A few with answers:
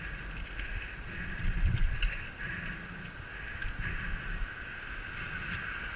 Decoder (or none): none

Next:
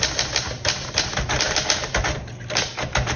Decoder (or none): none